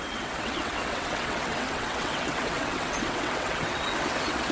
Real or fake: fake